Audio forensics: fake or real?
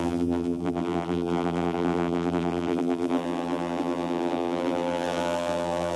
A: fake